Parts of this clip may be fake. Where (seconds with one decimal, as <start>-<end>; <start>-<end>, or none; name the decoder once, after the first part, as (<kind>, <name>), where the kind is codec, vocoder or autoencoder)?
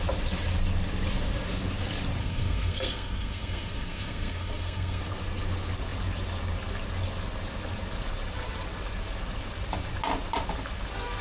2.2-5.0 (codec, SNAC)